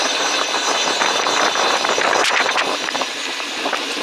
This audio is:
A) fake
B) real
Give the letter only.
A